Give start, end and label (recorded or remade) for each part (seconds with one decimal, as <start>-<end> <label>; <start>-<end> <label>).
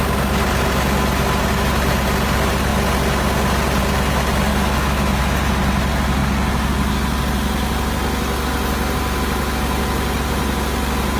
0.0-4.5 recorded; 4.5-5.2 remade; 5.2-11.2 recorded